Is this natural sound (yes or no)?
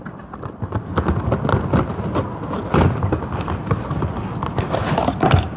yes